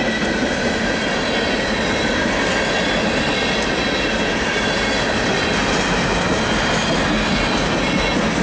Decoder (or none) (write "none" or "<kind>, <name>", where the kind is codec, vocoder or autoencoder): none